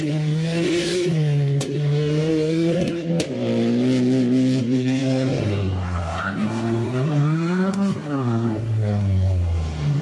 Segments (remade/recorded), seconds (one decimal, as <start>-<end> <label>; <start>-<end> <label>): 0.0-3.1 remade; 3.1-4.6 recorded; 4.6-10.0 remade